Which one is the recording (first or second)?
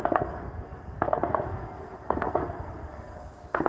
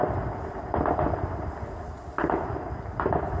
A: second